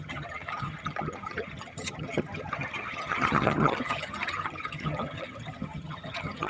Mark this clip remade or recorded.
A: remade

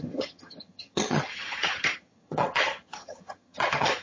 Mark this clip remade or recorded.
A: remade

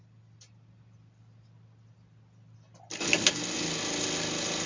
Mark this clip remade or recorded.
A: recorded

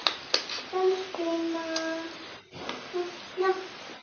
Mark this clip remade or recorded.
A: recorded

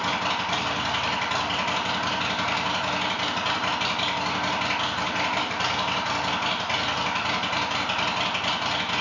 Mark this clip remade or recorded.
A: recorded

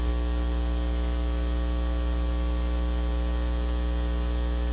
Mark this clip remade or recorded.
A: recorded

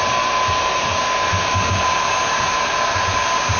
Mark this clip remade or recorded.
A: recorded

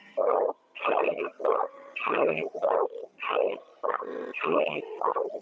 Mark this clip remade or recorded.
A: remade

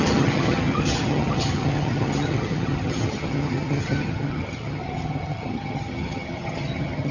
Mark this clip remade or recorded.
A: remade